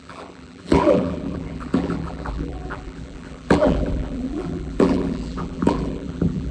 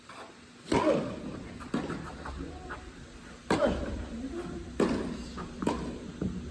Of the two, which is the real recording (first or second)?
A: second